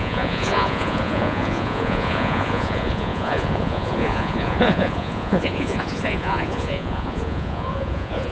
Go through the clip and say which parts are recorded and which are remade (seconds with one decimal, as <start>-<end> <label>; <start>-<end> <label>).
0.0-8.3 remade